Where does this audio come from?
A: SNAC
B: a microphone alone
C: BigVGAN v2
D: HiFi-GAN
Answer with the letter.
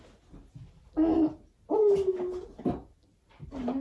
B